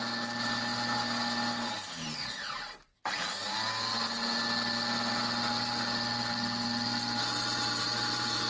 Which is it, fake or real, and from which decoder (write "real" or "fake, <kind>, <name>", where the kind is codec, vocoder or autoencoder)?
real